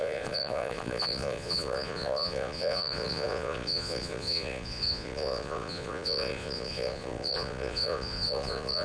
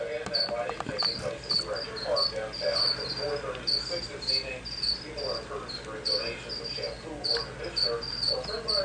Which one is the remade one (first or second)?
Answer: first